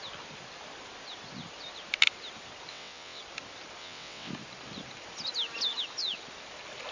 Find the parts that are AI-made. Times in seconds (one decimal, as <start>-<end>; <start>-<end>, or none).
2.7-3.2; 3.8-4.3